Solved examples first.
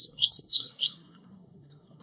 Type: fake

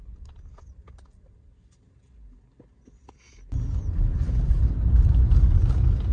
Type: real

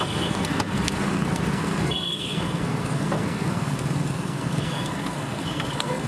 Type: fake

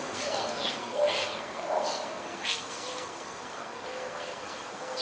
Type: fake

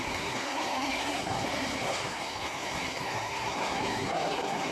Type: fake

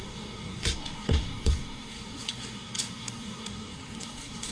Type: fake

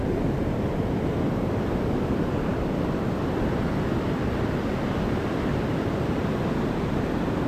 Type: real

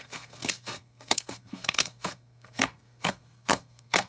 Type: fake